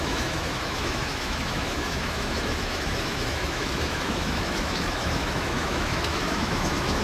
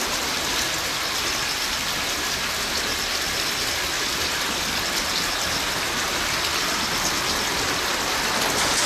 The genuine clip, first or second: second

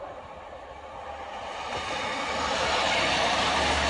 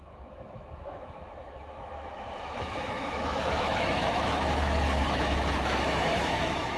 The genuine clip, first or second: first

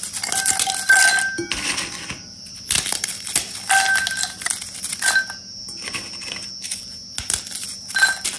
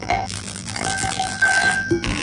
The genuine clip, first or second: first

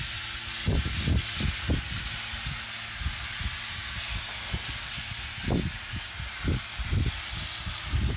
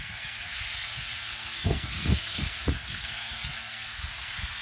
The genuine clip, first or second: first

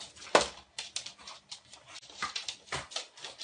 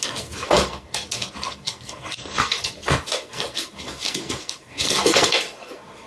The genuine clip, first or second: first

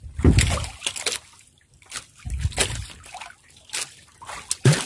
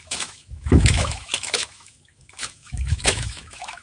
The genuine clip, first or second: first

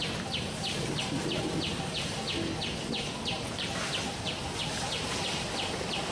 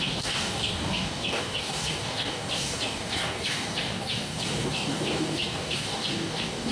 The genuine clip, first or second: first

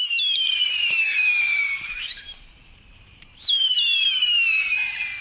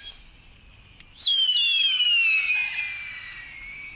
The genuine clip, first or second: second